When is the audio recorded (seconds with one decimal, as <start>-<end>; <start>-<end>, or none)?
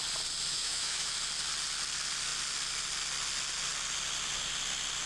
0.0-0.5; 1.1-5.1